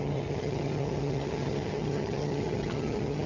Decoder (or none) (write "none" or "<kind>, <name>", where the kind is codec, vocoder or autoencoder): vocoder, HiFi-GAN